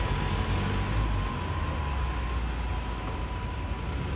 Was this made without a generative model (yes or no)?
yes